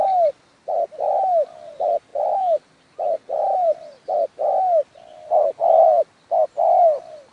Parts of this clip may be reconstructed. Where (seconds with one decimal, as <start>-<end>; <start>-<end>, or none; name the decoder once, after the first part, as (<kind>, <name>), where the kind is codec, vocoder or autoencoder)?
2.1-3.8 (vocoder, BigVGAN v2); 5.6-6.1